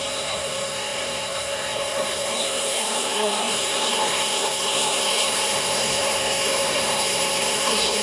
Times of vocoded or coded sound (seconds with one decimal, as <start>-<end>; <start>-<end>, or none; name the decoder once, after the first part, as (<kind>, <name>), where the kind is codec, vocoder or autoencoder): 0.0-8.0 (codec, SNAC)